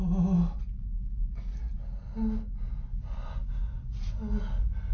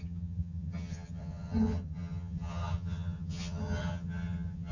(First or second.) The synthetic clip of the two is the second